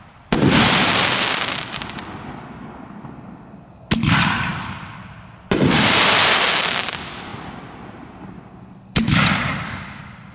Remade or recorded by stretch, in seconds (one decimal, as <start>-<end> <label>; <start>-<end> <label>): 0.0-10.3 recorded